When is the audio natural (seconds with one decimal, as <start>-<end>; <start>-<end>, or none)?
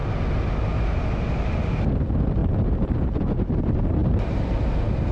0.0-2.4; 3.6-4.0; 4.6-5.1